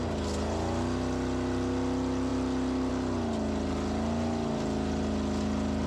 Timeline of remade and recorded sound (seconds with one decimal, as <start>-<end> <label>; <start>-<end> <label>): 0.0-5.9 recorded